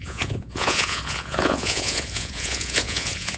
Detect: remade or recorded remade